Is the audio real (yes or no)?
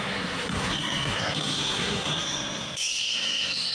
no